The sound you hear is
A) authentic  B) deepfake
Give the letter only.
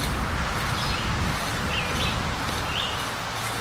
A